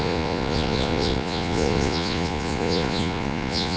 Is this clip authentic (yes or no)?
no